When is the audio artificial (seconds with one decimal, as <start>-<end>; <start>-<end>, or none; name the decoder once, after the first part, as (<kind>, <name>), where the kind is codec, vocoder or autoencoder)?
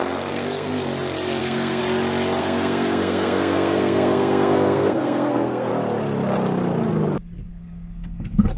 0.0-0.7 (codec, SNAC); 1.4-1.8; 2.4-5.7; 7.5-8.6